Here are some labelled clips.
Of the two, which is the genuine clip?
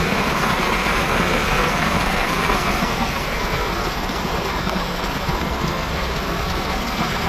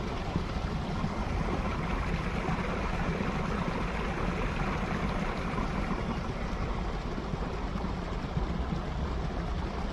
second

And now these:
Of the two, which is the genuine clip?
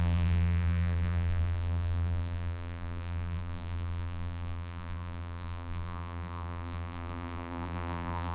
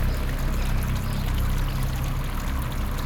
second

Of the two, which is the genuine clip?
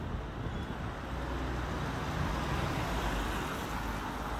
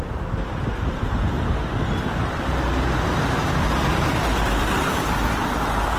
first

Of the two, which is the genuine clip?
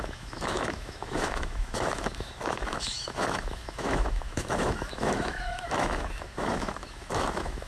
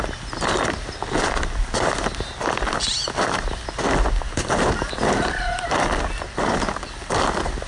second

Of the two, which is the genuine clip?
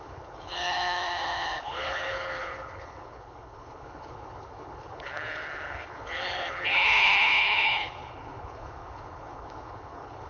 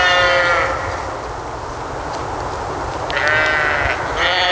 second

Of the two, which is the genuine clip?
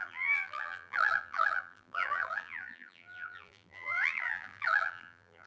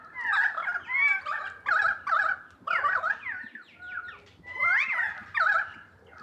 second